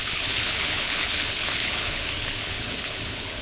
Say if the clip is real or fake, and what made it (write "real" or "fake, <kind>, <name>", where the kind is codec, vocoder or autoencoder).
fake, codec, HILCodec